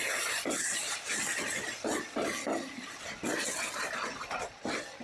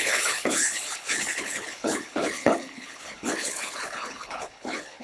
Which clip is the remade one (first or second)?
second